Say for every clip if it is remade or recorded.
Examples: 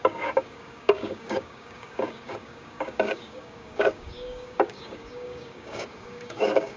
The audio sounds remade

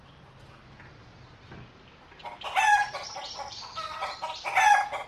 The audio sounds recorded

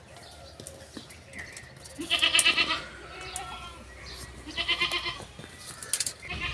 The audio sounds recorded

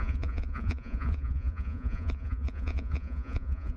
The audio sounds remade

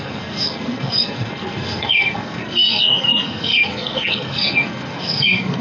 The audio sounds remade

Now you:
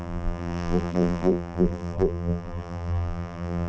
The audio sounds remade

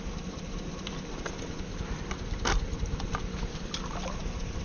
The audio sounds recorded